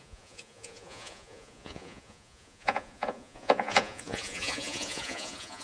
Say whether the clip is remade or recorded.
remade